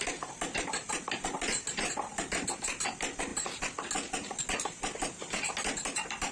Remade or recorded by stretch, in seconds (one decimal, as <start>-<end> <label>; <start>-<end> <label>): 0.0-6.3 recorded

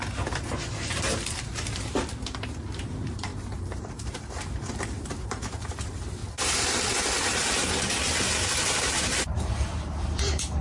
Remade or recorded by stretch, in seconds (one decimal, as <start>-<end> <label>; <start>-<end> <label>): 0.0-6.2 remade; 6.2-8.8 recorded; 8.8-10.6 remade

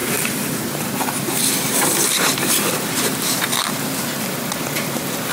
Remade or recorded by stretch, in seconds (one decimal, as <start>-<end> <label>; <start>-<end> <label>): 0.0-3.2 remade; 3.2-5.3 recorded

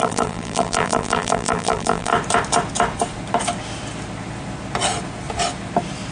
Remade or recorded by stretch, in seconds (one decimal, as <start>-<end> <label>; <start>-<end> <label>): 0.0-2.1 remade; 2.1-6.1 recorded

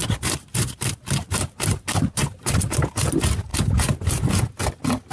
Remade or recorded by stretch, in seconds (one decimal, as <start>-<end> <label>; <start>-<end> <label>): 0.0-3.1 remade; 3.1-3.5 recorded; 3.5-4.2 remade; 4.2-5.1 recorded

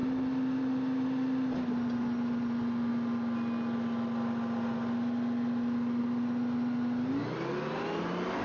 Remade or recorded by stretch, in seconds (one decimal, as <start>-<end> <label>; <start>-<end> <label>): 0.0-2.9 remade; 2.9-6.0 recorded; 6.0-8.4 remade

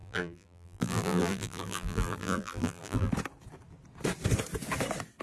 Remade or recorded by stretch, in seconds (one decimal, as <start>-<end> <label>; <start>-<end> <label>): 0.0-3.1 remade; 3.1-5.2 recorded